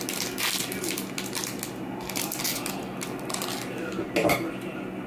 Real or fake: real